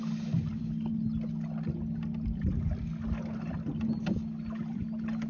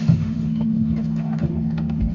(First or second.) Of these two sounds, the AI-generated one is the second